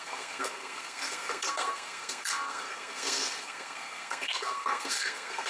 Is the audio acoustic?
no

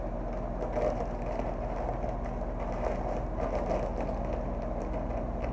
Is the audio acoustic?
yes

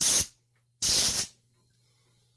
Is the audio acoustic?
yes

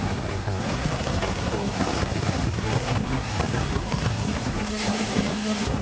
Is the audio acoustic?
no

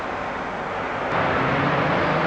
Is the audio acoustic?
yes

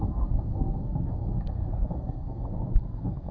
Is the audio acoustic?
no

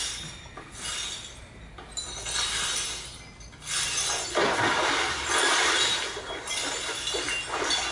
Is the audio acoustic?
yes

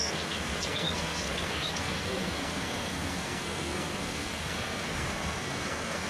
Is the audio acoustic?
no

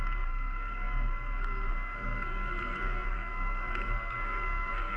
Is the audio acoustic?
no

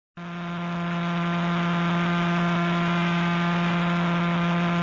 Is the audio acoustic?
yes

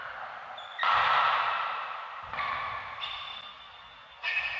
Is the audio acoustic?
yes